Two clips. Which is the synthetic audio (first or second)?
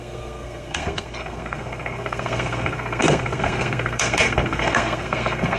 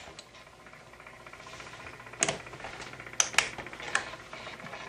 first